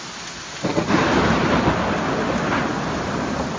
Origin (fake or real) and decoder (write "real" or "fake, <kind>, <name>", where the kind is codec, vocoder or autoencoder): real